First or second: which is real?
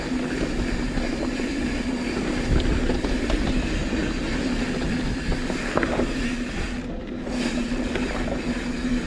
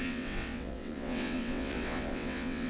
first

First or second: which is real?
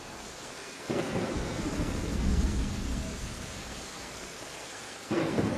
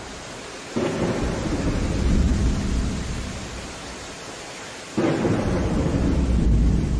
second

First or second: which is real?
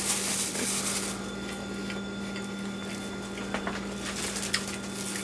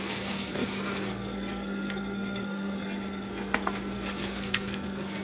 first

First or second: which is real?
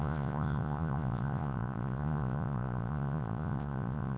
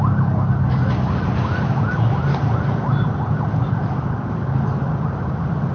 second